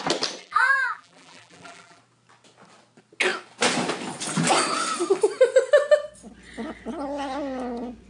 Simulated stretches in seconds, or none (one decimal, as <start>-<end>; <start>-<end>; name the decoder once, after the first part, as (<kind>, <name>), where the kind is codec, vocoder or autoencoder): 0.4-2.0 (vocoder, BigVGAN v2)